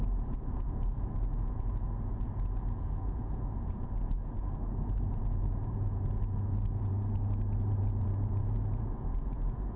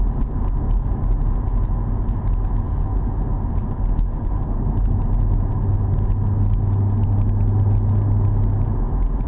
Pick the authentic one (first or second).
second